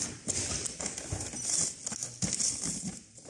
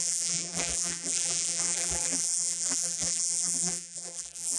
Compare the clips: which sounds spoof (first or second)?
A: second